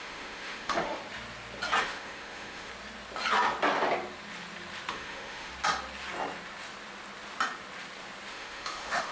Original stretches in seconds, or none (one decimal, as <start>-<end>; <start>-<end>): 1.0-1.8; 2.7-4.9; 5.5-8.3